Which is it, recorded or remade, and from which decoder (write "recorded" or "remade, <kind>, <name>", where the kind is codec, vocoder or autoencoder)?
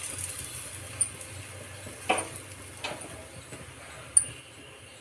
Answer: recorded